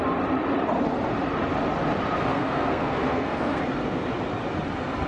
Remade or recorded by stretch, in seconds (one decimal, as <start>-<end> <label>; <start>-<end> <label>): 0.0-2.3 recorded; 2.3-3.6 remade; 3.6-5.1 recorded